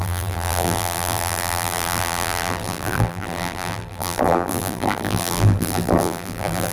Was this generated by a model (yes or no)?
yes